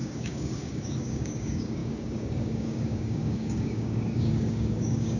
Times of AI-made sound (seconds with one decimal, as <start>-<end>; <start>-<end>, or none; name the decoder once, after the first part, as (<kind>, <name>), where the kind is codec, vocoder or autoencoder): 0.0-5.2 (codec, DAC)